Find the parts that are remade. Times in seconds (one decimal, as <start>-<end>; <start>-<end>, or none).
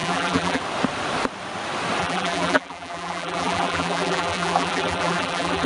0.0-0.6; 2.0-5.7